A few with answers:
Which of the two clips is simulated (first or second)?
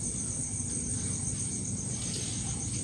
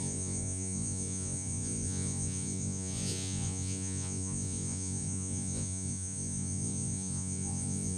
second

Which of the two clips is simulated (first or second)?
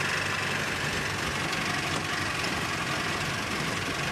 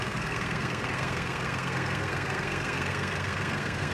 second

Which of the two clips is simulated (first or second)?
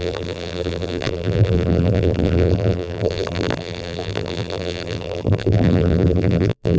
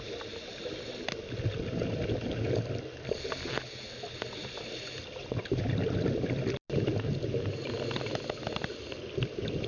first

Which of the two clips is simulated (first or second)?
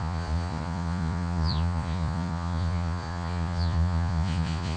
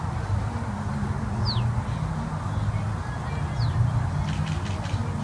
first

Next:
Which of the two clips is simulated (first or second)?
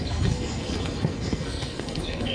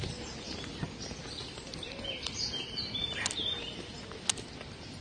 first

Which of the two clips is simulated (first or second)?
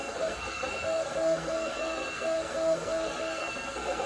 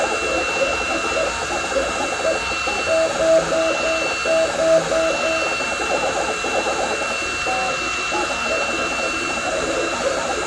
first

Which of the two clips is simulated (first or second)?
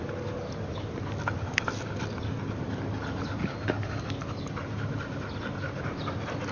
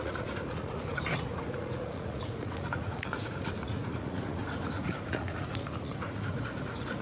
second